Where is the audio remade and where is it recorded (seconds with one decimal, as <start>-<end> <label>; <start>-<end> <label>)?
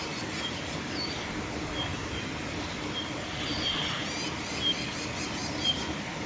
0.0-6.3 recorded